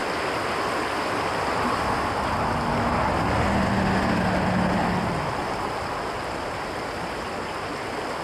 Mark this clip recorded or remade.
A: recorded